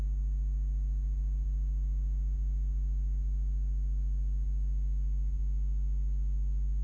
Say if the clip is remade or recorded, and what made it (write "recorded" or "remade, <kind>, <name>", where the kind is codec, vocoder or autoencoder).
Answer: recorded